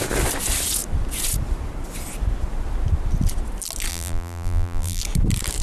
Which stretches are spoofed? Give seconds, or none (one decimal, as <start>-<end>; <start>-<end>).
3.9-5.0